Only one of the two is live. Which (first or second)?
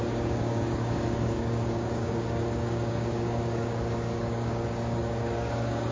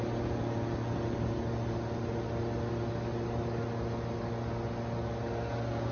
second